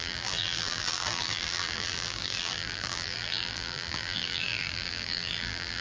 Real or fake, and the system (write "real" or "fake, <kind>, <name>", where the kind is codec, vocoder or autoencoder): fake, vocoder, BigVGAN v2